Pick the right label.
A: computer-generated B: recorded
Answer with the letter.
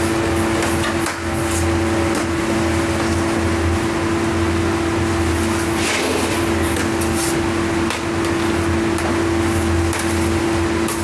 B